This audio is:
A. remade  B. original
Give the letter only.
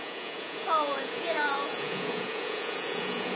A